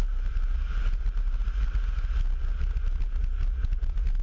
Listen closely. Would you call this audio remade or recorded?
recorded